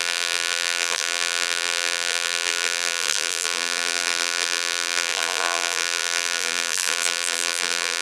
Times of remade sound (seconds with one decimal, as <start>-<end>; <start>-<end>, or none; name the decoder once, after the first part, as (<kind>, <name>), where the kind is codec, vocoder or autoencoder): 0.0-8.0 (vocoder, BigVGAN v2)